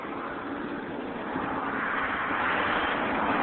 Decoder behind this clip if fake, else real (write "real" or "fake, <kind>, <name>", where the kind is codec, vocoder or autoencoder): fake, vocoder, BigVGAN v2